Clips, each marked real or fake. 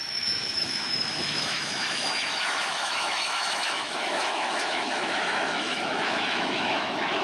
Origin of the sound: fake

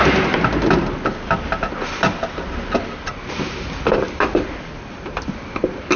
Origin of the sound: real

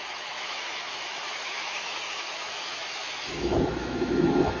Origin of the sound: fake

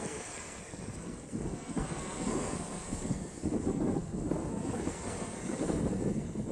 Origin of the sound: fake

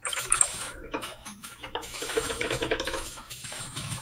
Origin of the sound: fake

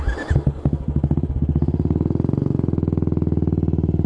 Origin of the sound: real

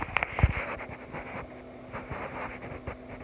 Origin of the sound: real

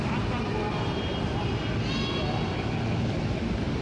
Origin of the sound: real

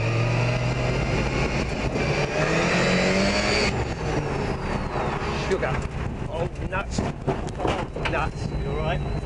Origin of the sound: real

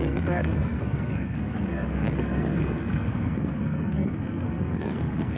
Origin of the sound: fake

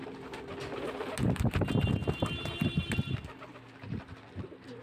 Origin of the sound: real